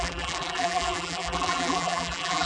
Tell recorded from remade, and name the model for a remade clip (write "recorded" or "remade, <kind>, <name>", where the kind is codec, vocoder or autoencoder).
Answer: remade, vocoder, BigVGAN v2